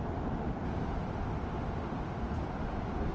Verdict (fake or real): real